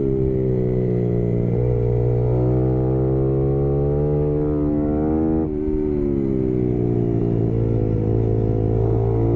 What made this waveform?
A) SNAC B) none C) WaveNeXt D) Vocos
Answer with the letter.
B